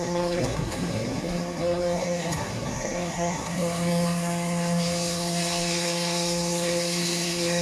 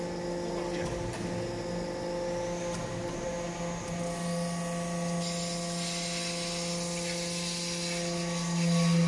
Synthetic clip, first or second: first